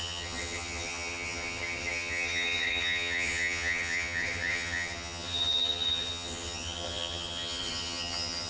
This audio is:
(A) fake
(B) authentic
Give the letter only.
A